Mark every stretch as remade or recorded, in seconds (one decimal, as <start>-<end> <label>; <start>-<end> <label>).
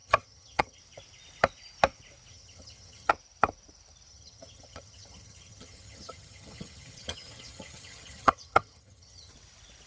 0.0-0.8 remade; 0.8-2.3 recorded; 2.3-3.1 remade; 3.1-4.1 recorded; 4.1-9.3 remade; 9.3-9.9 recorded